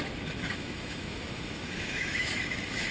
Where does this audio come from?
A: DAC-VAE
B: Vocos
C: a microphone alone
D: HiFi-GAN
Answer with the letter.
A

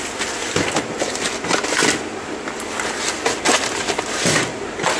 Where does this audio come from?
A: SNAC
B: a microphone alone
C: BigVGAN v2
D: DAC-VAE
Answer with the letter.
B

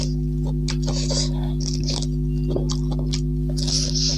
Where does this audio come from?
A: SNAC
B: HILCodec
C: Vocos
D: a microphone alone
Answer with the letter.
D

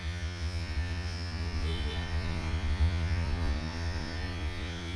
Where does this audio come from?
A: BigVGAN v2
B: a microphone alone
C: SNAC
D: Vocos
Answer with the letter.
D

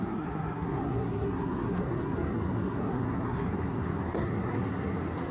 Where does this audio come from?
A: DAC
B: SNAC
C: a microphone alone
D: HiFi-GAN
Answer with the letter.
B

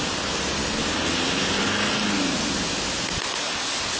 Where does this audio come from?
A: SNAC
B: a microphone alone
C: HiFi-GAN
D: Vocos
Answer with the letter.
B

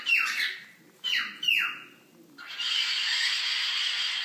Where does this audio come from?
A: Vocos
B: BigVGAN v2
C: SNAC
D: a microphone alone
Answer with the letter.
D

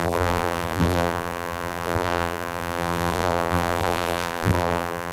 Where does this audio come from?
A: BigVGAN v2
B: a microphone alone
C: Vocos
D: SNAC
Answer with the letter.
A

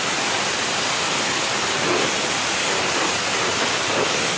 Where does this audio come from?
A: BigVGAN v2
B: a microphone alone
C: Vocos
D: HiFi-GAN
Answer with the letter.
B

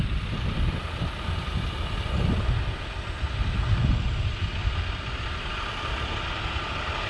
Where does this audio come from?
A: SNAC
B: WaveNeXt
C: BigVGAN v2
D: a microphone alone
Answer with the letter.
D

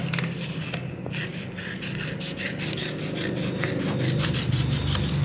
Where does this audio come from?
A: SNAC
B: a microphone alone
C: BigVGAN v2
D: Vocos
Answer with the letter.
B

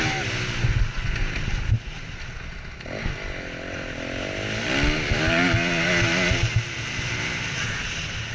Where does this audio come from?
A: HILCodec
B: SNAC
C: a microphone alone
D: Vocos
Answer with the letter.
C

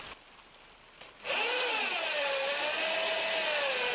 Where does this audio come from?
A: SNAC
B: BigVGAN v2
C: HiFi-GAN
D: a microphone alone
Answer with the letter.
D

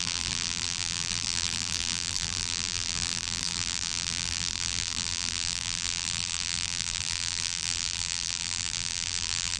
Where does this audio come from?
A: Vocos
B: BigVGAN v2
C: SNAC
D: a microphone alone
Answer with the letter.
B